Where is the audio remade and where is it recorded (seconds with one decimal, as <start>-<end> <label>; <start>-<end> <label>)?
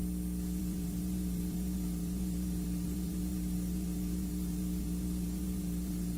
0.0-0.6 recorded; 0.6-6.2 remade